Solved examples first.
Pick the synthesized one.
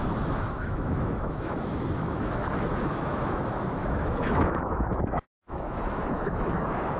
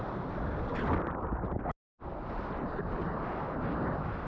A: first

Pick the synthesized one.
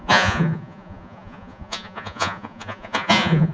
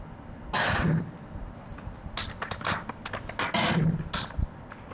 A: first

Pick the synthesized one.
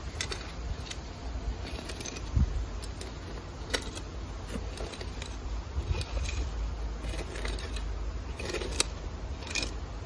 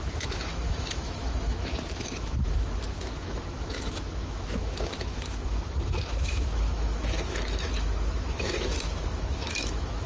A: second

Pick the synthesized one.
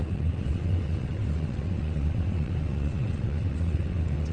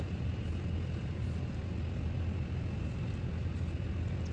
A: first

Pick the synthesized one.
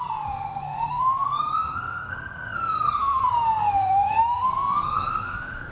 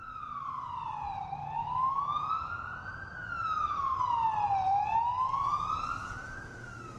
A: first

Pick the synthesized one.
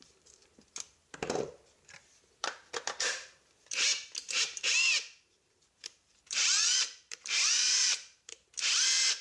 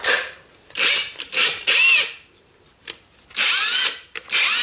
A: first